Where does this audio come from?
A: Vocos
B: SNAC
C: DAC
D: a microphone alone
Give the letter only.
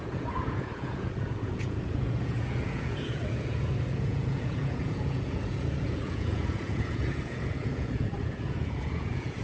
A